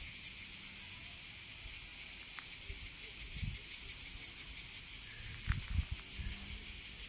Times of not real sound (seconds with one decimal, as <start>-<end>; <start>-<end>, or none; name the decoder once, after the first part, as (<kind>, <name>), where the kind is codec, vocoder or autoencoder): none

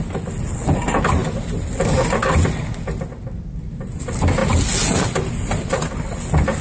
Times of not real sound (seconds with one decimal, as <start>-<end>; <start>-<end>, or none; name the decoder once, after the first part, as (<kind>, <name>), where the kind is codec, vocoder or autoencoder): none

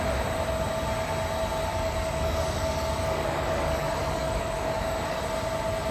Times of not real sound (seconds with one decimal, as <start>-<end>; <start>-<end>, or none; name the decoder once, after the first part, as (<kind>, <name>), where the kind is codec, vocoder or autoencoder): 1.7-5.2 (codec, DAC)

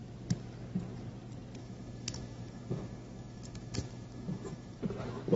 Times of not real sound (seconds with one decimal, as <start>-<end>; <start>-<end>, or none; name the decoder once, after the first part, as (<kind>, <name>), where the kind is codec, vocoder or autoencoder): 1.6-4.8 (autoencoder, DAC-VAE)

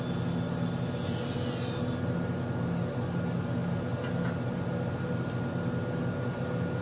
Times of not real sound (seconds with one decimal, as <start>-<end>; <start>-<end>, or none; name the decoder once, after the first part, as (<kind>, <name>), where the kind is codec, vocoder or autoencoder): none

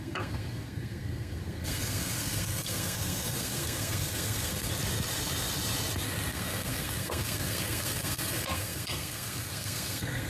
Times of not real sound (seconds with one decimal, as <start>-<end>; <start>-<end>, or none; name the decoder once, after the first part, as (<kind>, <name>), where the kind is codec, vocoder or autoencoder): 0.0-4.7 (codec, SNAC); 6.3-10.3